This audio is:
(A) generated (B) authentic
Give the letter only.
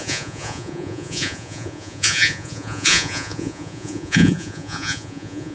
A